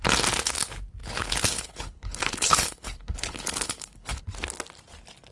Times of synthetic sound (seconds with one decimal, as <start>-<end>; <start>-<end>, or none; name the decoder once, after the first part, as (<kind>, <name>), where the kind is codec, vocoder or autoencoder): 1.0-4.2 (codec, HILCodec)